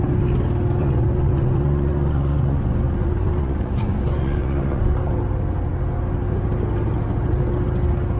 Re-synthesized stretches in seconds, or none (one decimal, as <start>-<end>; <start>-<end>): 0.8-5.1